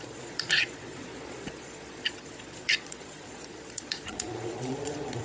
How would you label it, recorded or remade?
remade